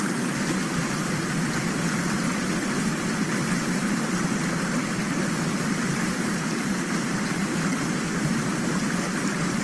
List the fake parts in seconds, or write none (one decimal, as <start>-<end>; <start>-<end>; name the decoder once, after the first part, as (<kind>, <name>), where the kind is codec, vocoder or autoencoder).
3.4-4.6 (vocoder, BigVGAN v2); 5.6-8.8